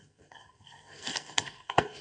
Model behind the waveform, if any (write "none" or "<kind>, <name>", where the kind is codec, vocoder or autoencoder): codec, SNAC